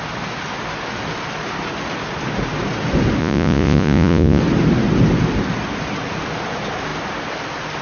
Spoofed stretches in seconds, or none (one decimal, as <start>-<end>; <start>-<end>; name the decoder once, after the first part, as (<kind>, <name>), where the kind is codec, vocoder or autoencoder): 3.2-4.4 (vocoder, Vocos)